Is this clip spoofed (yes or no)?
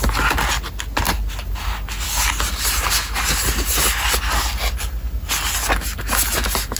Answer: no